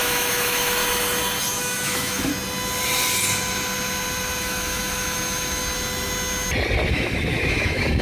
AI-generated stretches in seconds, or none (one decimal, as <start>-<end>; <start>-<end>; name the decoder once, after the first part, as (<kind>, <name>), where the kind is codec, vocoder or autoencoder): 0.0-0.8 (autoencoder, DAC-VAE); 1.6-2.3; 4.4-5.6; 6.9-8.0

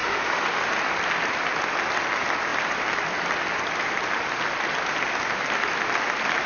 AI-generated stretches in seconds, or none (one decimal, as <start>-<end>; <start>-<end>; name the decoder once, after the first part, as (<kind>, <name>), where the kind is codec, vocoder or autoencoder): 0.0-0.7 (autoencoder, DAC-VAE)

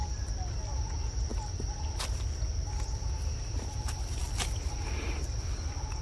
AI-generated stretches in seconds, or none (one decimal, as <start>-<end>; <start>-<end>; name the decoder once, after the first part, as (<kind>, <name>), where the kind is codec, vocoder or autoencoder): none

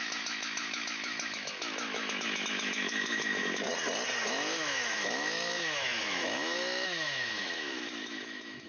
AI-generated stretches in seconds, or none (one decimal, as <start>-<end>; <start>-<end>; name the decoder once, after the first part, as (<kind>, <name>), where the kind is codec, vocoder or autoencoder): 0.0-3.7 (autoencoder, DAC-VAE); 4.3-8.7

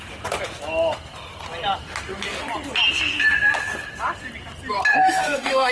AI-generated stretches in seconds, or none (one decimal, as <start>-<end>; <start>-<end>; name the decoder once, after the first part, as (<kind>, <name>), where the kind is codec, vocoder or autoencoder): 4.9-5.7 (autoencoder, DAC-VAE)

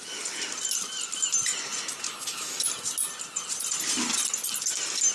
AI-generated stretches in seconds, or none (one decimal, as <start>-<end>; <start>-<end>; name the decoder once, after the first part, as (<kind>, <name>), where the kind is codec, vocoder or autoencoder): 2.1-2.6 (autoencoder, DAC-VAE)

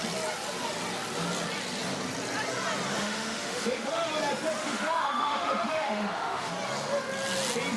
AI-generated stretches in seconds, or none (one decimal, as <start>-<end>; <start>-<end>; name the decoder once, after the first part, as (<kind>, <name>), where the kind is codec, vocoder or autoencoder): 3.0-4.1 (autoencoder, DAC-VAE); 4.6-6.5